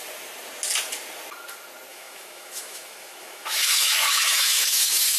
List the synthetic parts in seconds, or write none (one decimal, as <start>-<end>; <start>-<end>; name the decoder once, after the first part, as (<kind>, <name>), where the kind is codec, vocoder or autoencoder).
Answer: 1.9-5.2 (autoencoder, DAC-VAE)